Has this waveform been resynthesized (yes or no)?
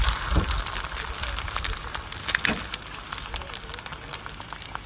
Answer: yes